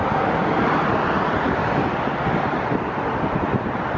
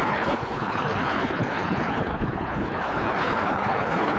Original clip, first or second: first